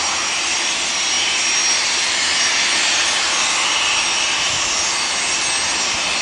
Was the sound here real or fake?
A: real